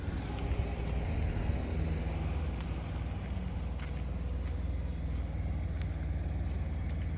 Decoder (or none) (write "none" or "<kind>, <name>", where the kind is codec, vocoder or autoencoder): none